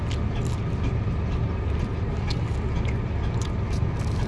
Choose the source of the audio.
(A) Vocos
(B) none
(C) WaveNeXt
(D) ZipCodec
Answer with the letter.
B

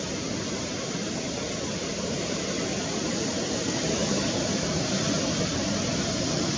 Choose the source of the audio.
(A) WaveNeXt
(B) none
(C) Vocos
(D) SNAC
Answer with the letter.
B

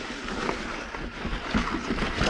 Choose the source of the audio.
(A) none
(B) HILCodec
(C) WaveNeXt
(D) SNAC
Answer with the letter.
A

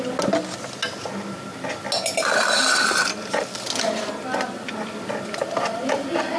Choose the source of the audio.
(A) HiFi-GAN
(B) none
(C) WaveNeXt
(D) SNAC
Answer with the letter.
B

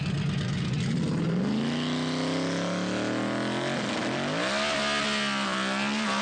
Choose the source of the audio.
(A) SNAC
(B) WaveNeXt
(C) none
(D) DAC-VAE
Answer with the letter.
C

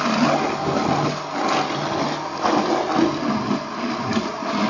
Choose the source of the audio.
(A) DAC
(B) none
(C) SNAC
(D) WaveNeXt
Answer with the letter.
B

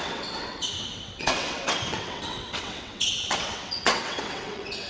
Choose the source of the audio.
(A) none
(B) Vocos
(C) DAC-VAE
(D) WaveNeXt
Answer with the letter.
D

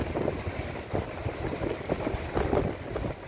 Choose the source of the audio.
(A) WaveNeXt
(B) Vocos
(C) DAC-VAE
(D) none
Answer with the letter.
D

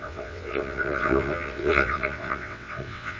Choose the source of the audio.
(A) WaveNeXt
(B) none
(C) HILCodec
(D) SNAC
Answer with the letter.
A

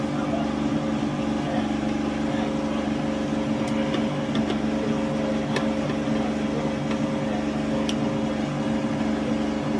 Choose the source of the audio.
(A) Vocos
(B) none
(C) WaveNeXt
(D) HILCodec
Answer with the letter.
B